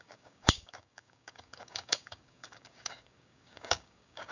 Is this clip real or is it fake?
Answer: fake